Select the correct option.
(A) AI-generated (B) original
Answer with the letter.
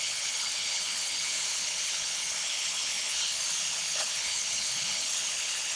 A